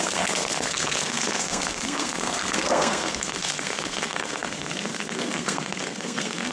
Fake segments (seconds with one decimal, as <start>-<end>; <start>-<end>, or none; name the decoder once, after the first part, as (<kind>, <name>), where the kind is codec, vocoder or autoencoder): 0.0-6.5 (codec, SNAC)